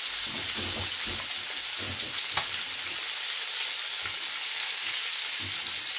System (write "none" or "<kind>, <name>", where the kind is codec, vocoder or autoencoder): none